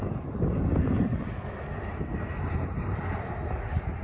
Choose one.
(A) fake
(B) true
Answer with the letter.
B